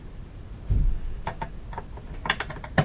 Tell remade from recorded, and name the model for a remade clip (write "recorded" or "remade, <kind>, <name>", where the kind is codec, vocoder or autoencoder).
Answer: recorded